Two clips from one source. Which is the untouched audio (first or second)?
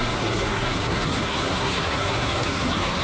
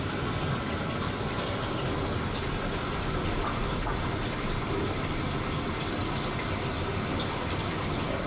second